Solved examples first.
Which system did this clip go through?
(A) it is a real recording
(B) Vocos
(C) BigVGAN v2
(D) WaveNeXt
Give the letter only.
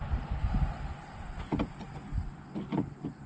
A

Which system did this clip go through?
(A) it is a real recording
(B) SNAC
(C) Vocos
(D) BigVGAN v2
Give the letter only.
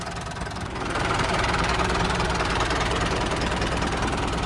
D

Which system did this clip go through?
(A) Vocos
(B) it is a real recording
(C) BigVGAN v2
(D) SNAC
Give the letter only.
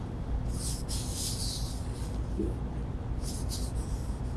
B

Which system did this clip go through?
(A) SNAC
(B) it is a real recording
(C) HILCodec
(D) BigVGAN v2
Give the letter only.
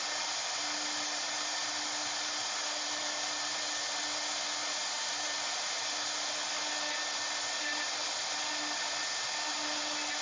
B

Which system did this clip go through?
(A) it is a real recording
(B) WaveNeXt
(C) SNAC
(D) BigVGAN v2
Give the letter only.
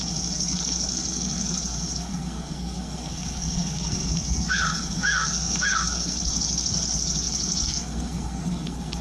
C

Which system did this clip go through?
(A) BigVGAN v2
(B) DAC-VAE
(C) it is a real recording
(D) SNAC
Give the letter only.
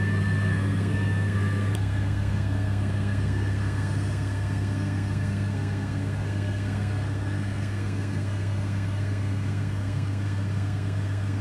D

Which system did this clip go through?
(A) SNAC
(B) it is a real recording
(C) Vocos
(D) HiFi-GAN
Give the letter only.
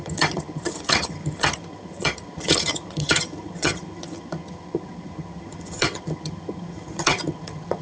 D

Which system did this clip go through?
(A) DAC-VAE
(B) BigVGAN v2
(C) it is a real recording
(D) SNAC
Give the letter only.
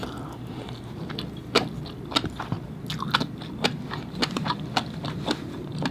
C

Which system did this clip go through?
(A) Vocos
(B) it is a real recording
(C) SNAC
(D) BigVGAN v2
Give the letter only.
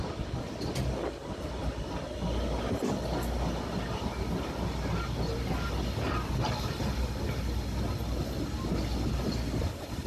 B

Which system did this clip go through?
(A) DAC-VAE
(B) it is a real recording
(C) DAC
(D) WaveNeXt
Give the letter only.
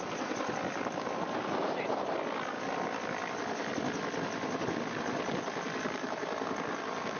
B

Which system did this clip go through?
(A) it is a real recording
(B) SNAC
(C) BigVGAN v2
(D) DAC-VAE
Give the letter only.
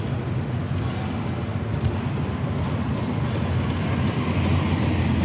A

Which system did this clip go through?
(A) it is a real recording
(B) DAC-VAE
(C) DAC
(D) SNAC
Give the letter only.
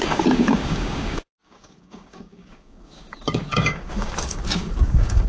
C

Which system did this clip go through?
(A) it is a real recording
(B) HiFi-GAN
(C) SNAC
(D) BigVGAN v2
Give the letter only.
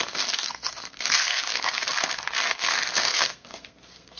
C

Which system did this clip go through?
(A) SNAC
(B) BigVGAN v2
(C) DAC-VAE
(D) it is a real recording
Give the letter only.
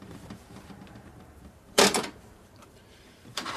B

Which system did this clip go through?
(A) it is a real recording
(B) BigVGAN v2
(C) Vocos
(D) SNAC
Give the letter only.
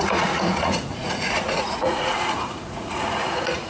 C